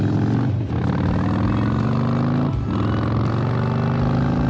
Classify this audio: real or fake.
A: real